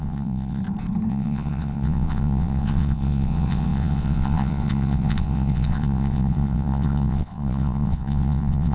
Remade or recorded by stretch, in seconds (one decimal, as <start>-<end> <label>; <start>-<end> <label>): 0.0-0.6 remade; 0.6-1.1 recorded; 1.1-8.7 remade